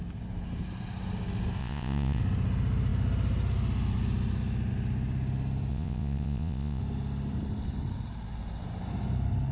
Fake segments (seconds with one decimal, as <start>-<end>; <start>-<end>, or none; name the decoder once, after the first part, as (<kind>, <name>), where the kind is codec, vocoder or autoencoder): 1.6-2.2 (vocoder, Vocos); 5.7-6.8